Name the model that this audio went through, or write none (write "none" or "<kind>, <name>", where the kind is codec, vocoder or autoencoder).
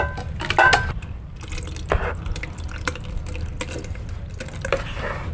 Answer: none